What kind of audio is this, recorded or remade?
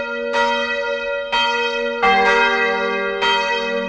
recorded